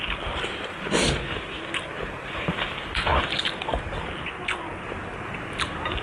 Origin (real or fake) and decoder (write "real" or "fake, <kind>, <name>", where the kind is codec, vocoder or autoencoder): real